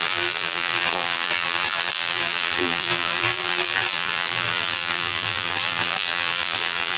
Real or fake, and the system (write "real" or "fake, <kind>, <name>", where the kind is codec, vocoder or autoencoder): fake, vocoder, BigVGAN v2